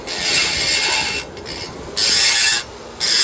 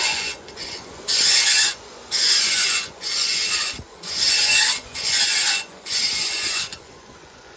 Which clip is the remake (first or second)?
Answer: second